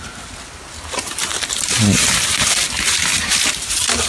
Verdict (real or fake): real